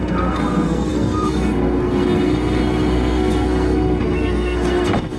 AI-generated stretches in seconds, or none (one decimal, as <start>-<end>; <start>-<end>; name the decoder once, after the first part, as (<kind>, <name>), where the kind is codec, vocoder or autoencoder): 0.0-5.2 (codec, SNAC)